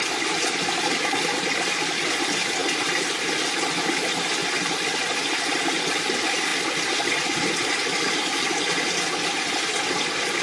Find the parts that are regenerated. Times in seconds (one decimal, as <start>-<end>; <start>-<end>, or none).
0.0-10.4